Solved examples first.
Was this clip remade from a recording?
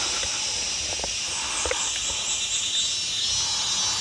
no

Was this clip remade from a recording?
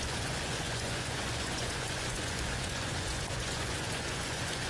yes